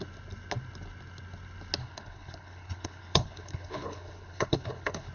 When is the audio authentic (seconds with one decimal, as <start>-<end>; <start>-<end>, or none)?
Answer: 0.0-1.8